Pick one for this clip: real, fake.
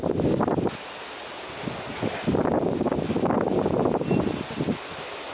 real